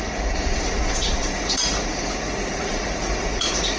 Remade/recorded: remade